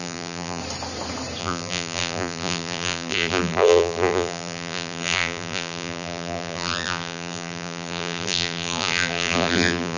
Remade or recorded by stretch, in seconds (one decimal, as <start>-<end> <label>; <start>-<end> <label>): 0.0-0.6 remade; 0.6-1.4 recorded; 1.4-10.0 remade